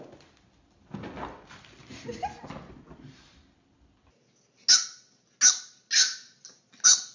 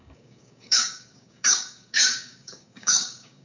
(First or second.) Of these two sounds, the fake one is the second